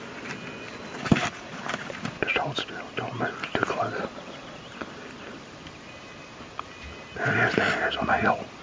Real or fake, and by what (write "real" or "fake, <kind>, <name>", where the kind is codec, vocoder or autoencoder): real